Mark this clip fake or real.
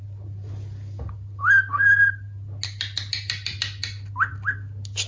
real